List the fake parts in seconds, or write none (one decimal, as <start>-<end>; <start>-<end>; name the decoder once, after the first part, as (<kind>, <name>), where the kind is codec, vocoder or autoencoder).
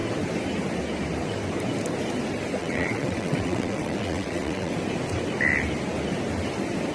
2.6-4.7 (vocoder, WaveNeXt)